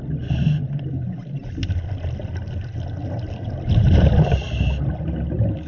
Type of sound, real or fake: real